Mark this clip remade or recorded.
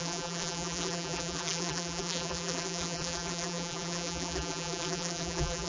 remade